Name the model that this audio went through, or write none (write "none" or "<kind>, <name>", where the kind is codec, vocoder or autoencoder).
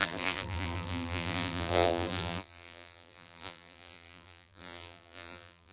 vocoder, BigVGAN v2